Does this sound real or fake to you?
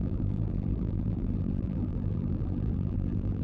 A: fake